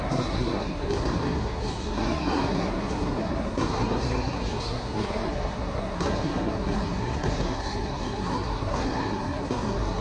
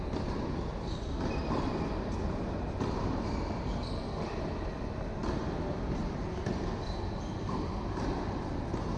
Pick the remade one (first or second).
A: first